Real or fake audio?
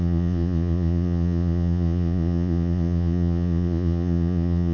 fake